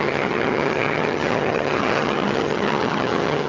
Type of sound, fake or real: fake